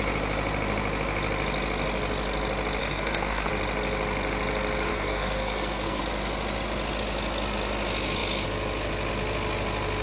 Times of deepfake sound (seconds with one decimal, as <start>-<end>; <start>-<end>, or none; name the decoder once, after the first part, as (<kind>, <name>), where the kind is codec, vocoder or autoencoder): 2.8-3.5 (codec, SNAC); 4.9-6.0